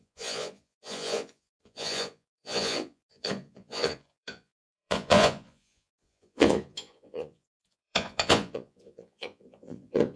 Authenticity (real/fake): fake